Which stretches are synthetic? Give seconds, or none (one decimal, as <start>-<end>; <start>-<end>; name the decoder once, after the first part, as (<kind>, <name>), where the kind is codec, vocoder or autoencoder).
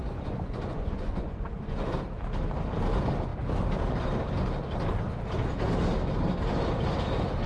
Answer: 0.0-1.9 (vocoder, Vocos)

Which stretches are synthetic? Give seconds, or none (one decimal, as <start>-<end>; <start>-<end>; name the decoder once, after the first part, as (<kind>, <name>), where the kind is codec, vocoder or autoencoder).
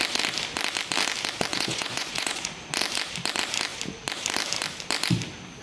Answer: 1.5-2.5 (vocoder, Vocos)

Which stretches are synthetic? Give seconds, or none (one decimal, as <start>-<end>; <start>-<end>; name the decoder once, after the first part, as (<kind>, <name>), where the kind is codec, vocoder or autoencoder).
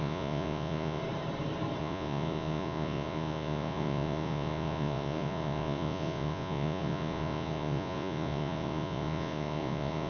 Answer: 0.0-1.0 (vocoder, Vocos); 1.8-10.1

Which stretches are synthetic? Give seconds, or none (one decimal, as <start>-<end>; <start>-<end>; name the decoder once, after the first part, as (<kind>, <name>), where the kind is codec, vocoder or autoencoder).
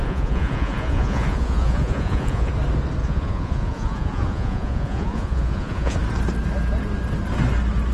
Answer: 0.0-2.5 (vocoder, Vocos); 3.0-6.0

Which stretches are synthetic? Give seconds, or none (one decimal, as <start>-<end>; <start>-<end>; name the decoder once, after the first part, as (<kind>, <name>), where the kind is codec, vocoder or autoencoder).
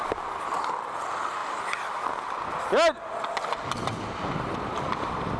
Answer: none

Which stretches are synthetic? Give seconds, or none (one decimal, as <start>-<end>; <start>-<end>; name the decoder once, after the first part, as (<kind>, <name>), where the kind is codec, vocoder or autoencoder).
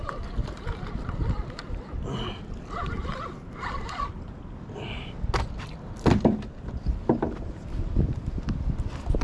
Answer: none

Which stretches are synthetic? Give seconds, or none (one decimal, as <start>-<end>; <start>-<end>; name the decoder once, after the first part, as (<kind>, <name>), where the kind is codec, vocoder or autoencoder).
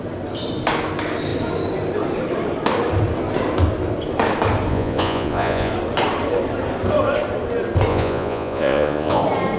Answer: 4.7-5.7 (vocoder, Vocos); 7.9-9.2